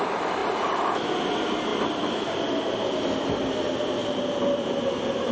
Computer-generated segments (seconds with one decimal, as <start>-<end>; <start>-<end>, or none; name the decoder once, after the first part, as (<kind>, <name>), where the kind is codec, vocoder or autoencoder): 0.4-1.1 (vocoder, BigVGAN v2); 4.0-5.3